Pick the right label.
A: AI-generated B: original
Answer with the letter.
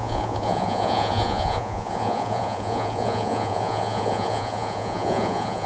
A